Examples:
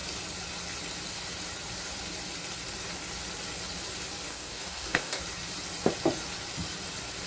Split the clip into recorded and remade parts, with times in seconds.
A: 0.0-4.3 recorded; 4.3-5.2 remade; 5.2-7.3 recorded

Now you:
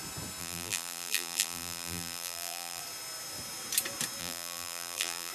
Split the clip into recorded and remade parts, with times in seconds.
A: 0.0-0.4 recorded; 0.4-2.8 remade; 2.8-4.2 recorded; 4.2-5.3 remade

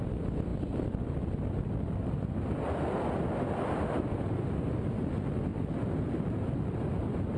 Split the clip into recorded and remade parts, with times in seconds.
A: 0.0-7.4 recorded

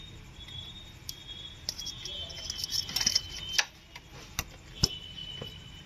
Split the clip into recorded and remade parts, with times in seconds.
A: 0.0-5.9 recorded